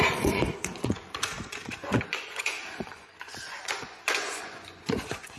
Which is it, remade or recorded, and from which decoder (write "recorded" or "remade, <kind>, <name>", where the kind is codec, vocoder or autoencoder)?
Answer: remade, vocoder, Vocos